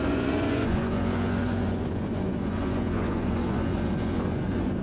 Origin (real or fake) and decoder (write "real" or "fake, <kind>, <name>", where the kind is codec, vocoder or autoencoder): fake, vocoder, Vocos